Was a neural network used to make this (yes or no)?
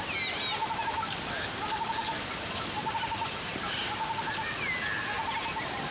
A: no